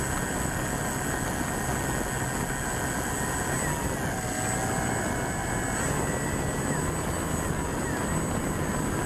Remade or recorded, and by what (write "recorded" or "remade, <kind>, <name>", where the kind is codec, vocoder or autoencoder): recorded